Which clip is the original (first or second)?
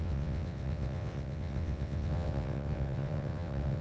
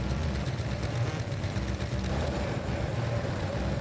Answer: second